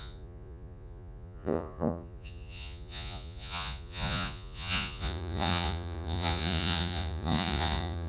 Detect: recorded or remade remade